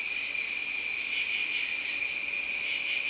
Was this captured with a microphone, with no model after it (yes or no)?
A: yes